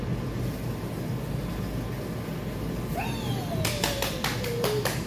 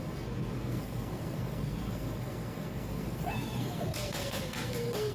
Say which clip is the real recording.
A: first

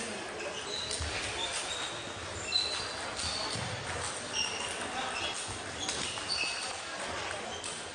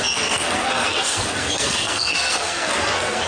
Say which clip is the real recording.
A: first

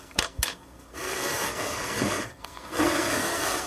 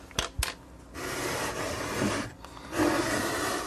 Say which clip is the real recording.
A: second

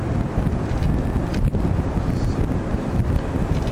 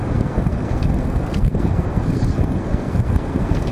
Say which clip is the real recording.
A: first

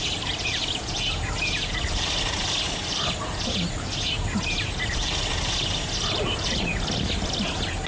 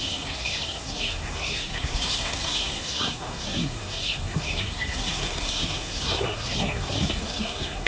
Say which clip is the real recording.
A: first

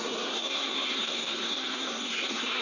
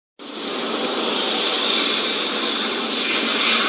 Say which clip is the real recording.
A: second